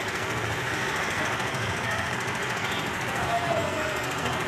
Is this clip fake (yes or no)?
yes